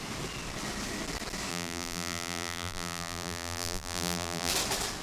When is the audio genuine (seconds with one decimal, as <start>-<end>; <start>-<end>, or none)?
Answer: 0.0-1.5; 4.5-5.0